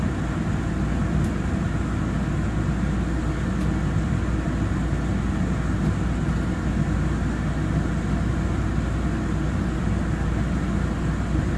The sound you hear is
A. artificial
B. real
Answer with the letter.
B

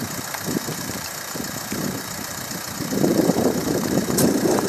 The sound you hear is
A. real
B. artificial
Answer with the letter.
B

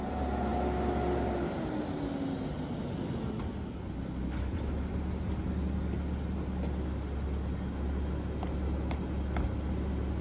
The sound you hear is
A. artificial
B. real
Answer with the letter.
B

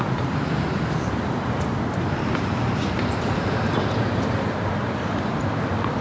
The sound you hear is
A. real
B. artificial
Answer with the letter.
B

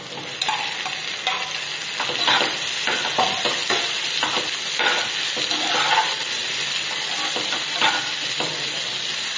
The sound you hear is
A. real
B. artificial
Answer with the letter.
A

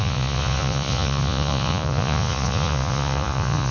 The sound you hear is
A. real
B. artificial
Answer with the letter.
B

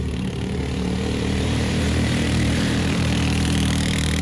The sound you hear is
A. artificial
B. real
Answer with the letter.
A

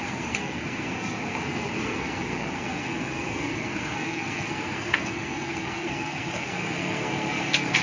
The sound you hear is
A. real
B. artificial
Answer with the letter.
B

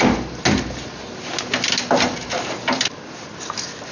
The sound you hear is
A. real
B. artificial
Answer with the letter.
A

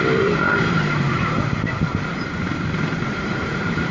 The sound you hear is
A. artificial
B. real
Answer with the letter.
A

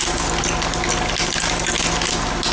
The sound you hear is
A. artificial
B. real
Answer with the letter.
B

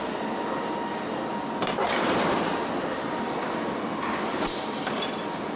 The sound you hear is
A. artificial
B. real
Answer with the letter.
B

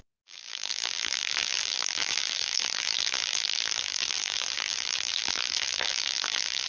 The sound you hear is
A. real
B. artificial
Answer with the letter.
B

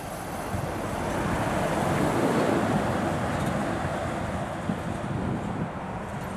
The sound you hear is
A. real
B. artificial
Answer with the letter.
A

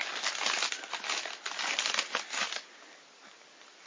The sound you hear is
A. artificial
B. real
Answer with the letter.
B